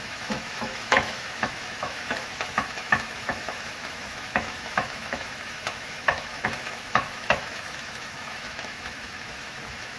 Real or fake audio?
fake